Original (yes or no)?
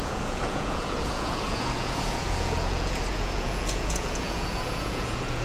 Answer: no